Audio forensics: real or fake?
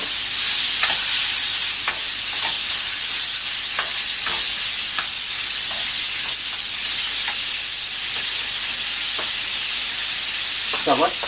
real